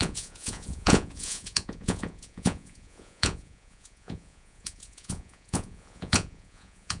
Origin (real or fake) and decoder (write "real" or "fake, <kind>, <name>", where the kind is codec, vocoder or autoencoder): fake, vocoder, Vocos